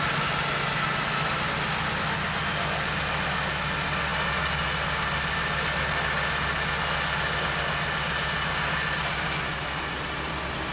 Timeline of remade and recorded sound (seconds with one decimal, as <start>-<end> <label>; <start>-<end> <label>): 0.0-10.7 recorded